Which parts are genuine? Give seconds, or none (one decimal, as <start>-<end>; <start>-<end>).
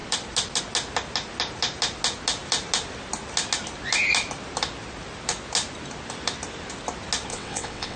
0.0-7.3